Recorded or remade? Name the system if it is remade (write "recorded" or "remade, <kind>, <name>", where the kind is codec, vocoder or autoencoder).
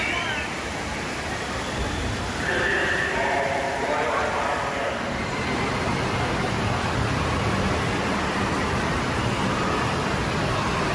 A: remade, vocoder, BigVGAN v2